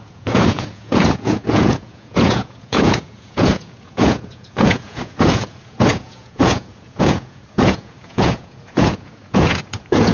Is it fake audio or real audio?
fake